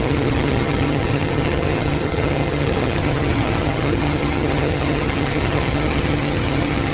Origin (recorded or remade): remade